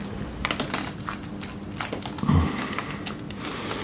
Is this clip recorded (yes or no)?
yes